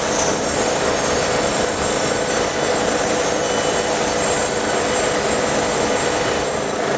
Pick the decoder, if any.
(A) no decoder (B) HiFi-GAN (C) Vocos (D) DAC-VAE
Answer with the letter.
A